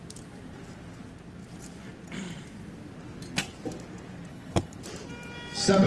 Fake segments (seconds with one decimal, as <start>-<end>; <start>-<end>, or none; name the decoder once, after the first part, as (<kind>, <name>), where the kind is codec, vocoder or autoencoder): 4.3-4.8 (codec, HILCodec)